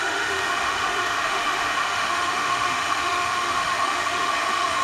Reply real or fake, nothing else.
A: fake